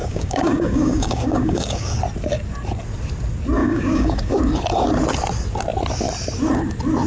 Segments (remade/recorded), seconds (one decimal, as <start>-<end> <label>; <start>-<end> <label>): 0.0-2.0 remade; 2.0-3.6 recorded; 3.6-4.3 remade; 4.3-7.1 recorded